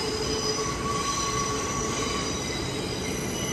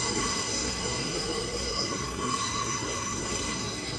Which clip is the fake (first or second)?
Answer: second